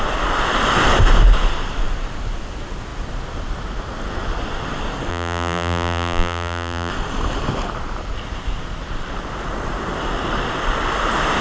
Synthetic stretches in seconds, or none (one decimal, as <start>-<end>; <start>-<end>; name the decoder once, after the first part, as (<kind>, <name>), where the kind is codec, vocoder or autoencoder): 5.1-6.9 (vocoder, BigVGAN v2)